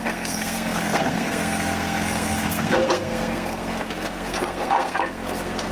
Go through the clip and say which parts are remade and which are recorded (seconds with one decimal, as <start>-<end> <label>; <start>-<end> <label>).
0.0-5.7 remade